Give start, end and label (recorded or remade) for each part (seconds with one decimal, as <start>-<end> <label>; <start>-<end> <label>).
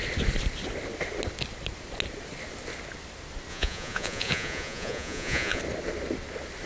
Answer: 0.0-3.5 recorded; 3.5-5.6 remade; 5.6-6.7 recorded